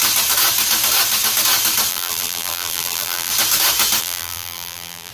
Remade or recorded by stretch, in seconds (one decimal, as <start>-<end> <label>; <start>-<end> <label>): 0.0-1.9 recorded; 1.9-3.3 remade; 3.3-4.0 recorded; 4.0-5.1 remade